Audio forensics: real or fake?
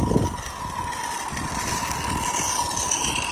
real